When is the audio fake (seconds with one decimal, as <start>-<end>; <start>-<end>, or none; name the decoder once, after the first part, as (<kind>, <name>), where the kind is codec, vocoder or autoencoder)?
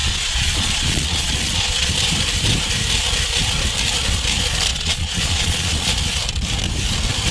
0.0-1.9 (vocoder, Vocos); 4.7-5.9